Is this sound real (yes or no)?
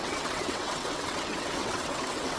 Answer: no